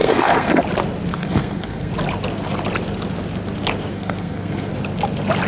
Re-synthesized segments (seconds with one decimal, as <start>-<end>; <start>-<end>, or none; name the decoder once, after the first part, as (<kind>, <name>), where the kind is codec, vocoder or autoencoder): 0.0-0.6 (codec, SNAC); 1.1-1.9; 3.9-4.7